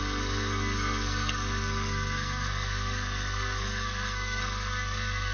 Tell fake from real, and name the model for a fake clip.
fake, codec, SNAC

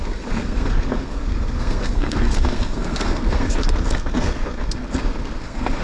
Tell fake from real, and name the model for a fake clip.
fake, codec, SNAC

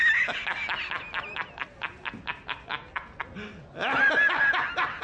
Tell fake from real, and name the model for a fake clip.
real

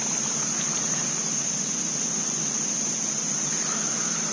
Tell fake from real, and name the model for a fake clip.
real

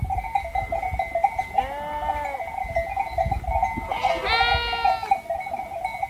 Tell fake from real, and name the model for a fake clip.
real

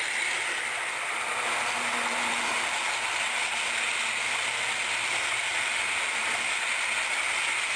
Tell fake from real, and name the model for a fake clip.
real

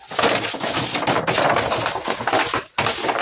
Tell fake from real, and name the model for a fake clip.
real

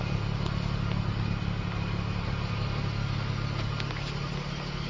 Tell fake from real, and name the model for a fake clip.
real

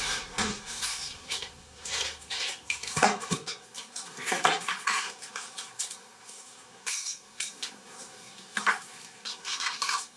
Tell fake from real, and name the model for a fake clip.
fake, codec, SNAC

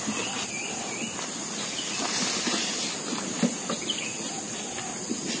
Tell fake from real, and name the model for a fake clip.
real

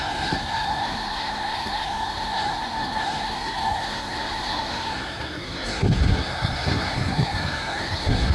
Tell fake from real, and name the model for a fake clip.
fake, codec, SNAC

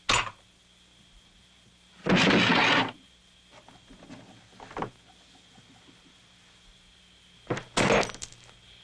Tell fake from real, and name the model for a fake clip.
real